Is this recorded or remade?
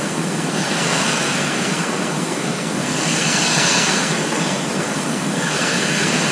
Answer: remade